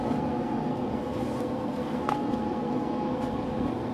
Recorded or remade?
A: remade